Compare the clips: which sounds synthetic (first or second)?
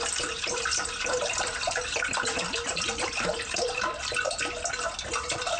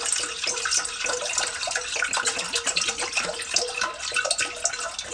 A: first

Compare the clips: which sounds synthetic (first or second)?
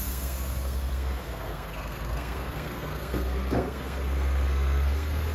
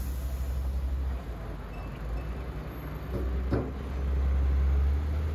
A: first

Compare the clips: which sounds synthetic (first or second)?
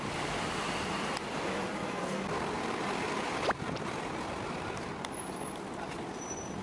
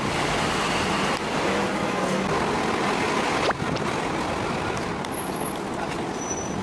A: first